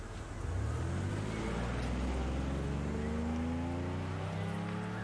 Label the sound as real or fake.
real